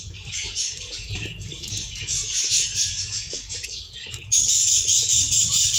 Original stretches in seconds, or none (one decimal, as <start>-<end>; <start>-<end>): none

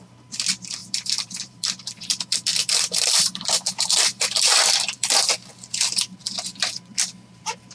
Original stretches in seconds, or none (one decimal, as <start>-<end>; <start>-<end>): 0.0-0.8; 2.0-2.5; 5.1-7.7

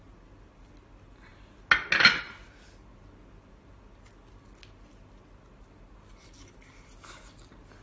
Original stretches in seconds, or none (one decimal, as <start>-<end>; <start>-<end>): 0.0-7.8

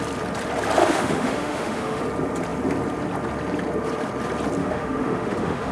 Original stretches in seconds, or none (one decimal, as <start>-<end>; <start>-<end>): 0.0-0.8; 2.0-4.6

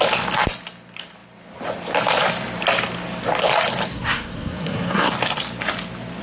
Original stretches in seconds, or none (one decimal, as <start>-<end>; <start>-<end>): 0.0-3.9; 5.1-6.2